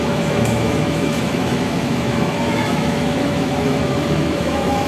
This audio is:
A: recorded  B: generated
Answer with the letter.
B